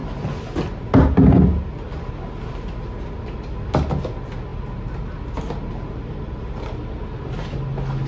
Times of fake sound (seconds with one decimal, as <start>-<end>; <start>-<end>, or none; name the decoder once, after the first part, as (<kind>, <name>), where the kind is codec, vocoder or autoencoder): none